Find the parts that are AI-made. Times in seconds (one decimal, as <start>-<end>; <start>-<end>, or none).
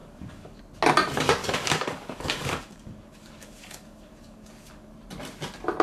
0.0-0.6; 1.4-4.9